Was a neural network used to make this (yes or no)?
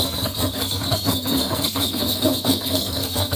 yes